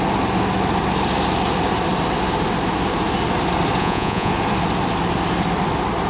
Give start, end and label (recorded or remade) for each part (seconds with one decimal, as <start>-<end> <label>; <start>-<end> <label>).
0.0-3.8 recorded; 3.8-4.3 remade; 4.3-6.1 recorded